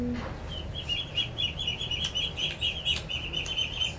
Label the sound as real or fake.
real